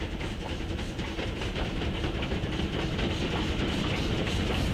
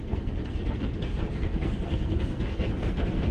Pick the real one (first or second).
first